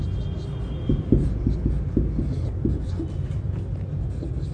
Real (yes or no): yes